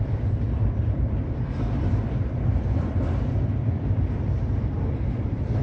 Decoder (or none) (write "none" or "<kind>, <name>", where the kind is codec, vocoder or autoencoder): vocoder, BigVGAN v2